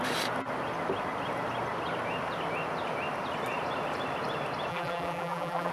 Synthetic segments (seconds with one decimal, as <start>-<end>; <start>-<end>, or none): 4.7-5.7